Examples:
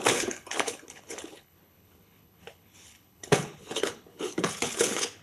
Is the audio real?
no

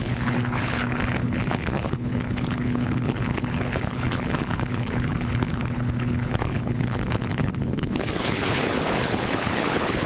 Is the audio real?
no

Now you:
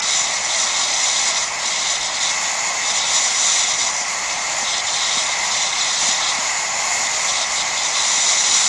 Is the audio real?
yes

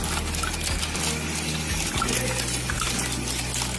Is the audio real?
yes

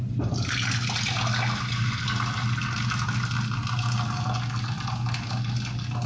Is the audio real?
yes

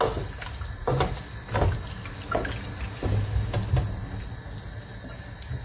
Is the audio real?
yes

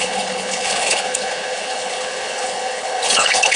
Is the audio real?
no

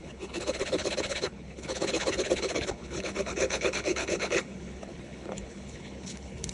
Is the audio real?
no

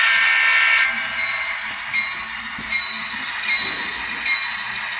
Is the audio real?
yes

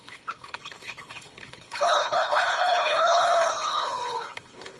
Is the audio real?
no